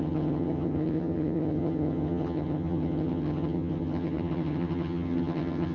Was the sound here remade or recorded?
remade